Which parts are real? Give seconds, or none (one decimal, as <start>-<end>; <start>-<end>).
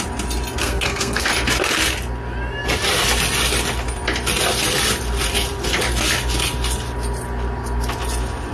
0.0-0.6; 1.3-8.5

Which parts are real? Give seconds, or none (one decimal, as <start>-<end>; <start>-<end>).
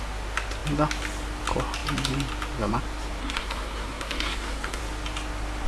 0.0-3.2; 4.8-5.7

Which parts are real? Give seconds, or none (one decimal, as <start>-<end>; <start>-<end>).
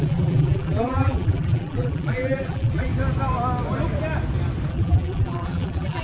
2.9-4.7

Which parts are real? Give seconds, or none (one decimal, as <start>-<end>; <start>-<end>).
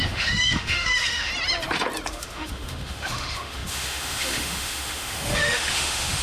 1.3-2.1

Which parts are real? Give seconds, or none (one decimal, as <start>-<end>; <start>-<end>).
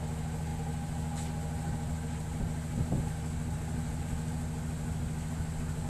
0.0-5.9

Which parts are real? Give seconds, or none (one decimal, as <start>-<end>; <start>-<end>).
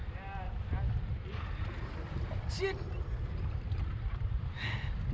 0.0-5.1